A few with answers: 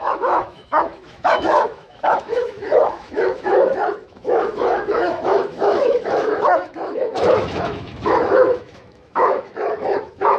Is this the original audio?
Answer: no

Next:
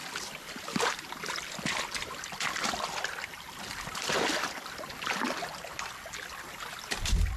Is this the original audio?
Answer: yes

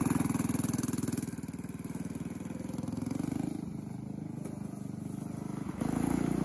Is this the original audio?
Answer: yes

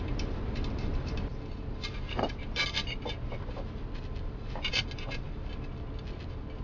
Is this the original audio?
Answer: yes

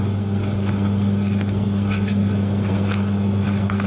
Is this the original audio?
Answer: no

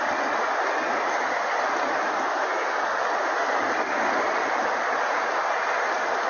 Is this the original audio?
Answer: yes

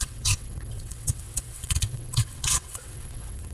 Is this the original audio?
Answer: no